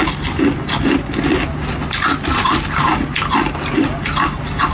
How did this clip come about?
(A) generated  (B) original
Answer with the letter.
B